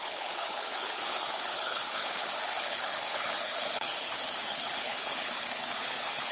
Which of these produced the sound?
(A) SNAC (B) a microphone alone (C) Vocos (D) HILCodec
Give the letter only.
D